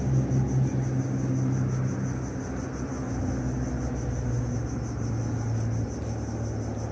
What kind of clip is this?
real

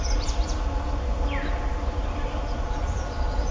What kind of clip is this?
real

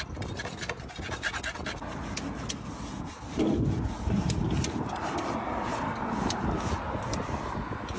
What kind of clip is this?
real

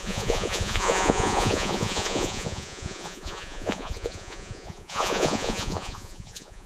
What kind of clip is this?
fake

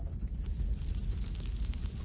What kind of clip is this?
real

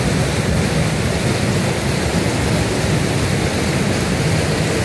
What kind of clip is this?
real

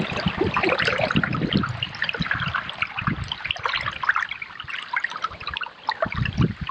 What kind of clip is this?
real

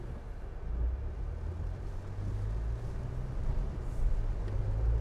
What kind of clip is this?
real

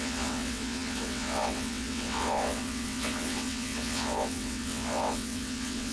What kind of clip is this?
fake